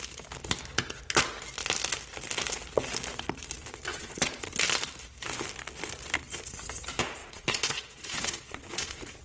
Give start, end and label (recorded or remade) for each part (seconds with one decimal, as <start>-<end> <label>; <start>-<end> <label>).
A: 0.0-3.9 recorded; 3.9-4.5 remade; 4.5-7.2 recorded; 7.2-9.2 remade